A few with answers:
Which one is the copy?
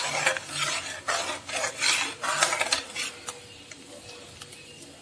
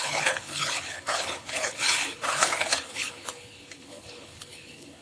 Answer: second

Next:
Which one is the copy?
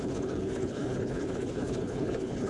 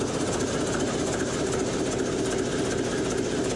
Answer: first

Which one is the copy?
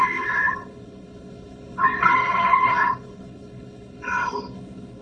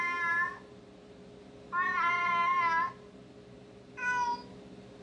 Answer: first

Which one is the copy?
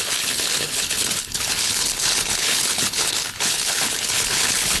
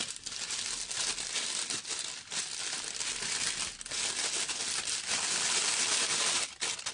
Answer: first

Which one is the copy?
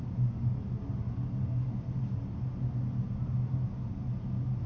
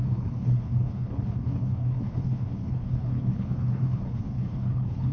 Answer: second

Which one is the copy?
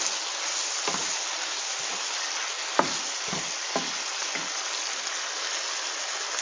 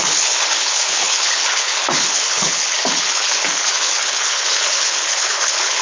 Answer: second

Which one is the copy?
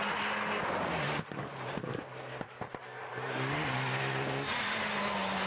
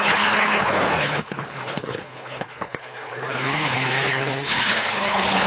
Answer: second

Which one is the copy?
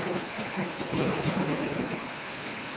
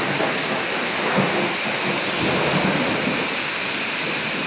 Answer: first